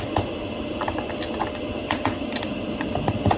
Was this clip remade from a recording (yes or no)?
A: no